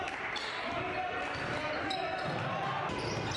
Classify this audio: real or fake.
real